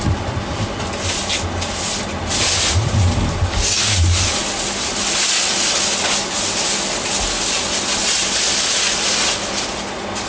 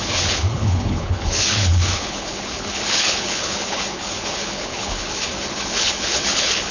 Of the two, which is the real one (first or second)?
first